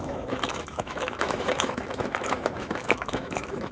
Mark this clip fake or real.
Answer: fake